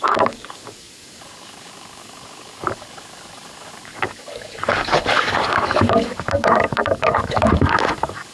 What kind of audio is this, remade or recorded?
remade